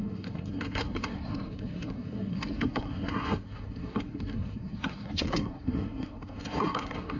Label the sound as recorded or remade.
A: remade